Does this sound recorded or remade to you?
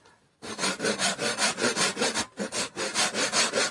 recorded